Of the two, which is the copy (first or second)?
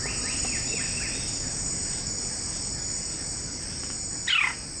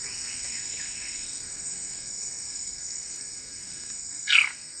second